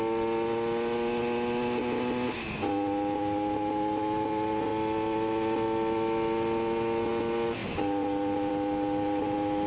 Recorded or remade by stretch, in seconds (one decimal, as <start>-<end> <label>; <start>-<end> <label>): 0.0-9.7 recorded